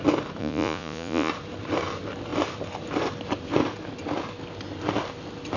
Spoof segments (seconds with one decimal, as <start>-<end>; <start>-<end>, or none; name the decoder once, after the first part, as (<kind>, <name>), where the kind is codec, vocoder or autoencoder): 0.4-1.3 (vocoder, Vocos)